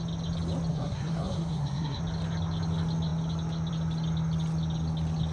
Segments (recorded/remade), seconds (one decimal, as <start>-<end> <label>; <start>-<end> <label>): 0.0-0.7 recorded; 0.7-2.0 remade; 2.0-5.3 recorded